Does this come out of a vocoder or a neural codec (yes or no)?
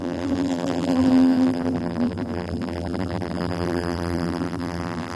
yes